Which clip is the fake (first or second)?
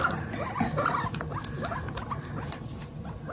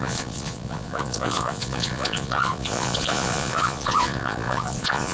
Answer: second